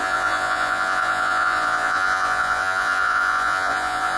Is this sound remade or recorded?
remade